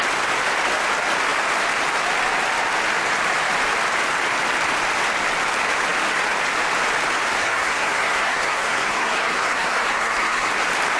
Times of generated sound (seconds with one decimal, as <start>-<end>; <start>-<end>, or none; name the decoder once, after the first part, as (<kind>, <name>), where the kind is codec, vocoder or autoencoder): 7.4-10.5 (codec, SNAC)

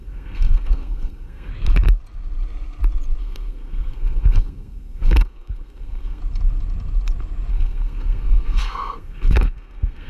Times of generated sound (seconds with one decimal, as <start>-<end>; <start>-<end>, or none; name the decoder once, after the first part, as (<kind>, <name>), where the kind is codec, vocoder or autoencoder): 0.0-1.5 (codec, SNAC); 3.2-6.2; 7.5-10.1

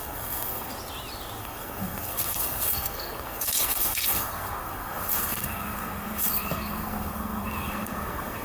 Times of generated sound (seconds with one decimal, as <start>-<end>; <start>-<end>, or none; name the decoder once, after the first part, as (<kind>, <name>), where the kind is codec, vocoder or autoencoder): 0.0-0.7 (codec, SNAC); 1.4-8.4

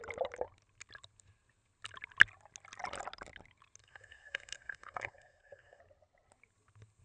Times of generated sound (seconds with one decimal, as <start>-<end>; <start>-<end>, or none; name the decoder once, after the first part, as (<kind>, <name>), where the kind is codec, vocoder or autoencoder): 3.8-5.8 (codec, SNAC)

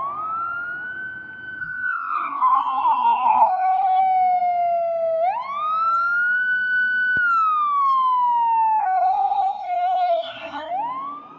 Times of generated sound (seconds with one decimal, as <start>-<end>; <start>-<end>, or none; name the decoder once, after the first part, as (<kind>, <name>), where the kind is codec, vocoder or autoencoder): 1.6-4.0 (codec, SNAC); 8.8-10.7

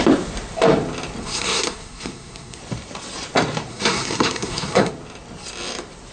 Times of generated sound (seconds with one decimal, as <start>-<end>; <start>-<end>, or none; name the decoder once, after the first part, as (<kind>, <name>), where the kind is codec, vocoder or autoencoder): 1.2-2.6 (codec, SNAC); 3.7-4.9

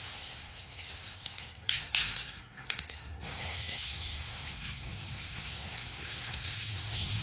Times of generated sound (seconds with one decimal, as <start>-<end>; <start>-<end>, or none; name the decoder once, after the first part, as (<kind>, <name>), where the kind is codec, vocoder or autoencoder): 0.0-7.2 (codec, SNAC)